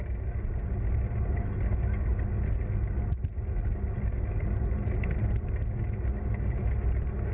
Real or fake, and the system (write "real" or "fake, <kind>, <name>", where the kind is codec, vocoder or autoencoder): real